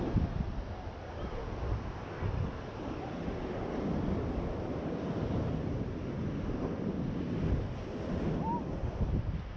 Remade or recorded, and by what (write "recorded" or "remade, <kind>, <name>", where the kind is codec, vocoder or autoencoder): recorded